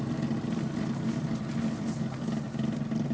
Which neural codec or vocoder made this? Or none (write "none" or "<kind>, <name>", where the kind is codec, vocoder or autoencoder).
none